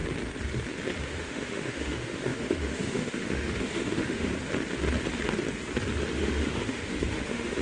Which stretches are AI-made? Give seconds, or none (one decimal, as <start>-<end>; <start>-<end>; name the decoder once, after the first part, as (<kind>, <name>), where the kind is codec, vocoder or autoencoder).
1.0-4.3 (autoencoder, DAC-VAE); 6.1-7.6

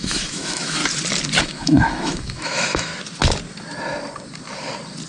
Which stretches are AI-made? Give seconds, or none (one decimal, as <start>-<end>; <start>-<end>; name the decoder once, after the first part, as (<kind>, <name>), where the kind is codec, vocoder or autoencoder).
0.0-0.8 (autoencoder, DAC-VAE); 1.4-2.9

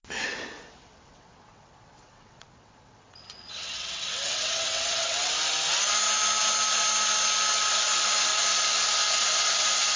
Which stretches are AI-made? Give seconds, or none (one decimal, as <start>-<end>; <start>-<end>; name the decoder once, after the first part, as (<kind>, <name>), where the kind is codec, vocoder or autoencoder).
0.8-5.3 (vocoder, WaveNeXt)